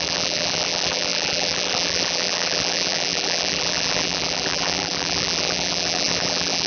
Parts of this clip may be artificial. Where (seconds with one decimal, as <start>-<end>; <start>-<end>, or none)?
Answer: 0.0-6.7